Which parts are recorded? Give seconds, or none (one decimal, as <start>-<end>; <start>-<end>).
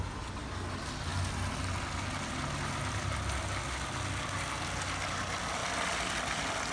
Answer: 0.0-6.7